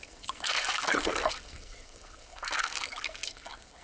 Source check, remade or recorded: remade